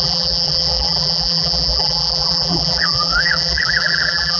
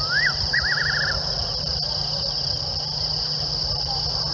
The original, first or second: second